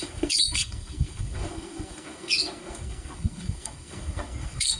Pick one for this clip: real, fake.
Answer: fake